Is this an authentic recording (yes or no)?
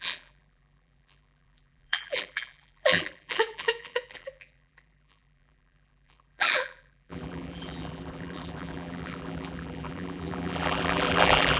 no